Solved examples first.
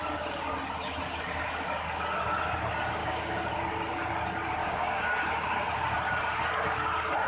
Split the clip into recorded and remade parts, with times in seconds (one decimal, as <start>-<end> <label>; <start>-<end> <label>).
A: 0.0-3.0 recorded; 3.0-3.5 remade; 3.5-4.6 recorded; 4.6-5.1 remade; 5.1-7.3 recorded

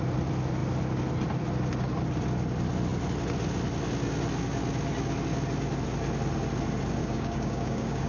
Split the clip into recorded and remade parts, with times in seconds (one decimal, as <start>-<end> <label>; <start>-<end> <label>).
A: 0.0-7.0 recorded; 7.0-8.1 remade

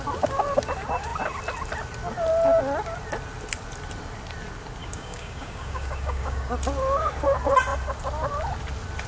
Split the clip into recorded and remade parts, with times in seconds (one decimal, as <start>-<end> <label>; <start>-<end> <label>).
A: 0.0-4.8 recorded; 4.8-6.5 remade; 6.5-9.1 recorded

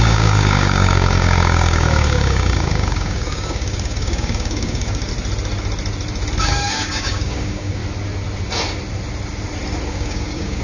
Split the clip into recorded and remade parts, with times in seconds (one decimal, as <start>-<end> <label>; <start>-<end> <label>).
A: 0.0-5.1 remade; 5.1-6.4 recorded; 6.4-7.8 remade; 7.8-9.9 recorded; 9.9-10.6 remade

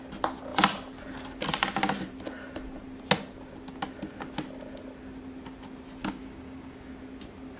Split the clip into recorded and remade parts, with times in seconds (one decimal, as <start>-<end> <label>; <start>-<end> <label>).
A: 0.0-6.0 recorded; 6.0-6.9 remade; 6.9-7.6 recorded

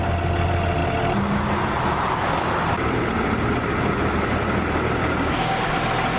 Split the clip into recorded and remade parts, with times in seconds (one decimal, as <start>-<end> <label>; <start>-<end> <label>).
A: 0.0-5.0 recorded; 5.0-5.7 remade; 5.7-6.2 recorded